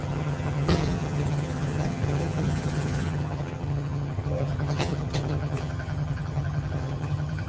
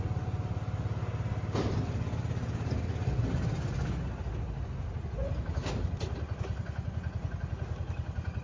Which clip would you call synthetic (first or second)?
first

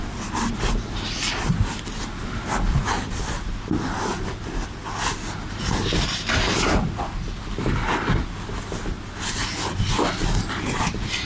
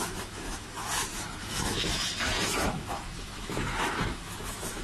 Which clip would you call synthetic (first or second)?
second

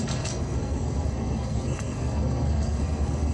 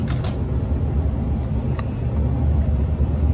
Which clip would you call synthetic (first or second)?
first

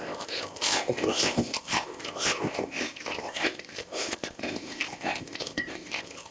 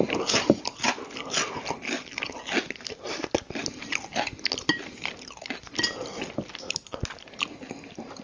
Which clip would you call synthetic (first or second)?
first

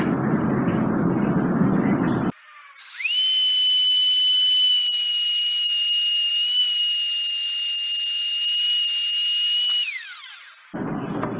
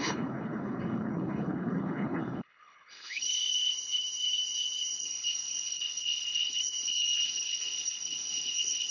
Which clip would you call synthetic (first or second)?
second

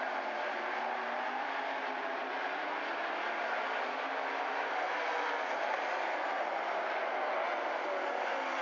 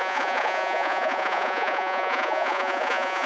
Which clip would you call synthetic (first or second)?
second